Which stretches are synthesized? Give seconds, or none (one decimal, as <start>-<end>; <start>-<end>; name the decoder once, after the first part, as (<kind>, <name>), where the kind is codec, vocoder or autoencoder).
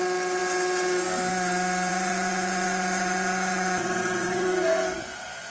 1.9-5.5 (vocoder, Vocos)